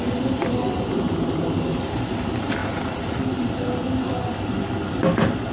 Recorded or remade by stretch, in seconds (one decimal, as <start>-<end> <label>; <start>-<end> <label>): 0.0-2.6 recorded; 2.6-3.2 remade; 3.2-5.5 recorded